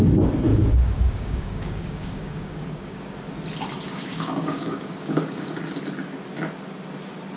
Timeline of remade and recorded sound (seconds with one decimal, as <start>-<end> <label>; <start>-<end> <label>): 0.0-0.5 recorded; 0.5-3.0 remade; 3.0-3.9 recorded; 3.9-5.6 remade; 5.6-7.4 recorded